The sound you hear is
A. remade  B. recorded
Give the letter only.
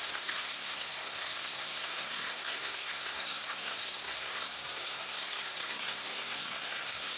A